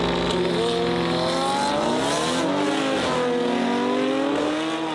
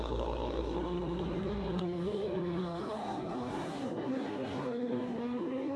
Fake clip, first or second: second